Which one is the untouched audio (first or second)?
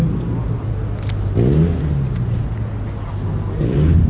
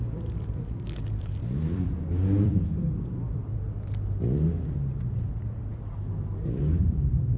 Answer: first